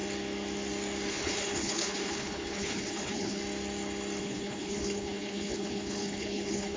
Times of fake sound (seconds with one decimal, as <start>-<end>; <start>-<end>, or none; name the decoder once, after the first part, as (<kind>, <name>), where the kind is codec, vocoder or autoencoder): 1.1-3.4 (codec, HILCodec); 4.2-6.8